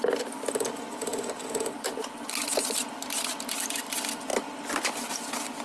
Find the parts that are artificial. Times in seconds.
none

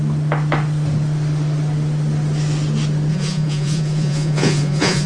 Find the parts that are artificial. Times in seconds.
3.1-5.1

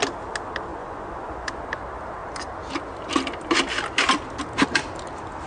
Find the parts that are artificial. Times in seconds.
0.7-1.8

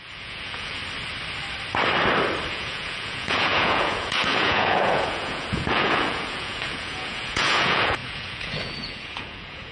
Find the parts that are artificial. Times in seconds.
0.0-0.8; 2.5-9.7